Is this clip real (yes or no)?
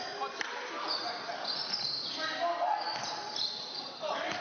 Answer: yes